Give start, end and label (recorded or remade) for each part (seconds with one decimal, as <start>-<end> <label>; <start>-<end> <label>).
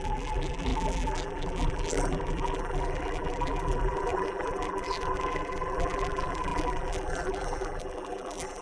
0.0-8.6 remade